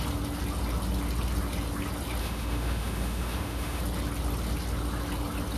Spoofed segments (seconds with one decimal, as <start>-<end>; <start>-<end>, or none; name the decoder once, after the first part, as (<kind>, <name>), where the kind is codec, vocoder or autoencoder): 2.2-3.8 (autoencoder, DAC-VAE)